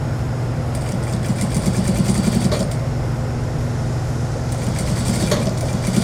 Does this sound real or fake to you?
real